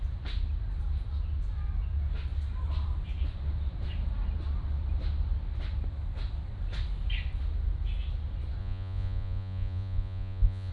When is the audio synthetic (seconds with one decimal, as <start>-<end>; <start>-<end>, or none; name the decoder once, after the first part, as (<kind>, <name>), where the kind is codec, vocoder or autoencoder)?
8.6-10.7 (vocoder, Vocos)